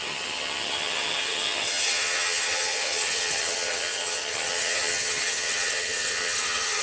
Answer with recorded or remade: remade